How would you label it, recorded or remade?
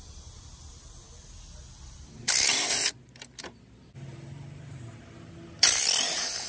recorded